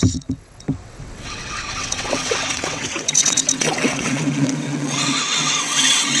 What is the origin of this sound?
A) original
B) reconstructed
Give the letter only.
B